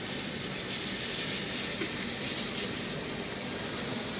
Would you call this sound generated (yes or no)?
no